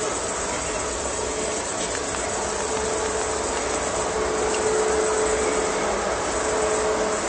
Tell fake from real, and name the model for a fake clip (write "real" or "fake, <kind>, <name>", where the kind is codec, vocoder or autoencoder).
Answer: real